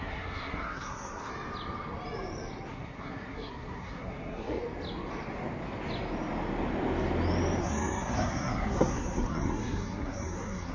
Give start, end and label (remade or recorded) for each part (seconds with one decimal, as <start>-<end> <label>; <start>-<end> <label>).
0.0-1.3 remade; 1.3-2.7 recorded; 2.7-4.6 remade; 4.6-7.6 recorded; 7.6-10.7 remade